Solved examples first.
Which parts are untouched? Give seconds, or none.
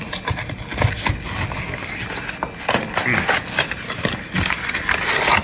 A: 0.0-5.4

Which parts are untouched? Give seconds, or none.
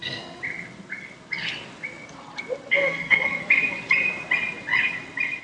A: 0.4-2.7; 3.4-5.4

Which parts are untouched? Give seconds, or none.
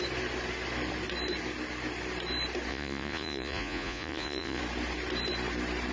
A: 0.0-2.7; 4.6-5.9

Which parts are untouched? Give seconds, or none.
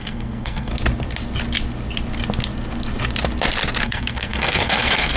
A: 0.7-3.8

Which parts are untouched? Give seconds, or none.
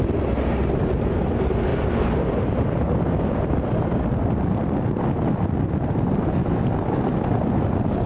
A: 0.0-8.1